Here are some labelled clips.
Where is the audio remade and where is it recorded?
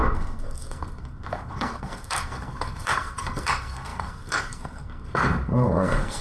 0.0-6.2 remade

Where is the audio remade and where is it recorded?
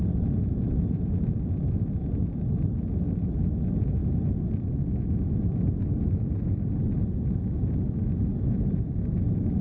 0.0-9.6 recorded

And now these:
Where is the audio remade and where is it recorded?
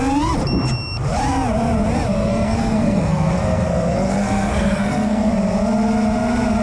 0.0-2.2 recorded; 2.2-5.3 remade; 5.3-6.6 recorded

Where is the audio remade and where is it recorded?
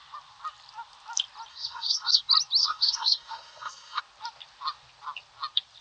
0.0-1.5 recorded; 1.5-2.2 remade; 2.2-2.6 recorded; 2.6-4.0 remade; 4.0-5.8 recorded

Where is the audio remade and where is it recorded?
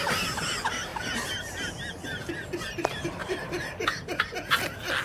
0.0-5.0 recorded